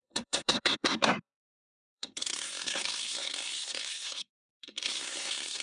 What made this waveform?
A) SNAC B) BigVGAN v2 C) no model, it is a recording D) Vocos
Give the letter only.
A